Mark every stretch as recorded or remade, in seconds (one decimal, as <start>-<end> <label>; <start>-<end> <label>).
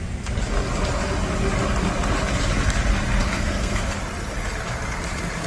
0.0-3.2 recorded; 3.2-3.8 remade; 3.8-5.5 recorded